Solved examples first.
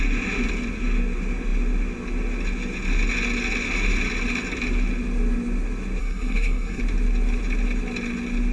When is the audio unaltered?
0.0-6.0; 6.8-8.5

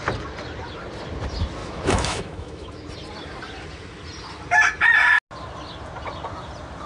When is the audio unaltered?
0.0-1.6; 2.7-6.9

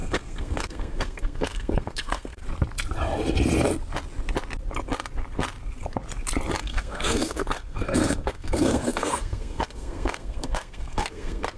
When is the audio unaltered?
2.4-6.6

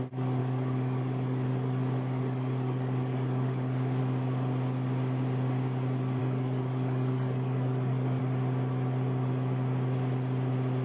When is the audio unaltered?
0.0-0.4; 4.0-6.2; 8.2-10.8